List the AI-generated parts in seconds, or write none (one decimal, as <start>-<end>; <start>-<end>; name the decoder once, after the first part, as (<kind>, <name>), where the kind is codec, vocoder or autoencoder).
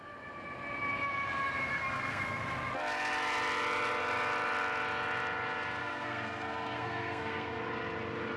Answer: 1.7-2.4 (codec, SNAC); 5.8-7.6